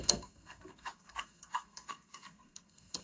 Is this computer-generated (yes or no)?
yes